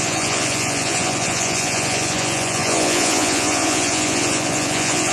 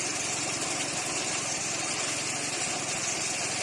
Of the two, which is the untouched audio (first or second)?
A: second